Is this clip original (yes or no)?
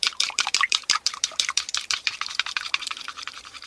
no